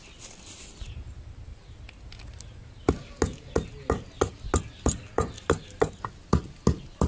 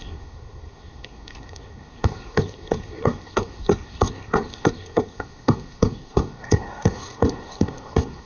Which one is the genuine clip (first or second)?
first